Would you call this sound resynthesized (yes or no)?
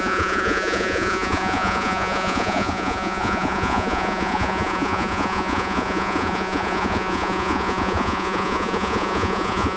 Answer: yes